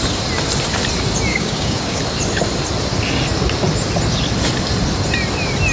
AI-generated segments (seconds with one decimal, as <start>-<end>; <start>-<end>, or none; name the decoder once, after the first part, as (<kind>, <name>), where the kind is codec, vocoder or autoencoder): 1.3-2.0 (codec, DAC)